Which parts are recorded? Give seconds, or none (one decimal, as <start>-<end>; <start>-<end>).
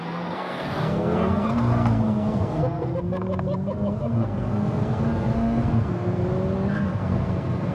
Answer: 6.2-6.7